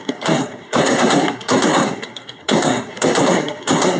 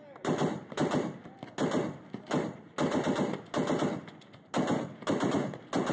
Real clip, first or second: second